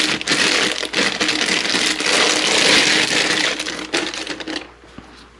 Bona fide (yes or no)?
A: yes